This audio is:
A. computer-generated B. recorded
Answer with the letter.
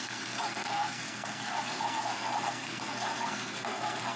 A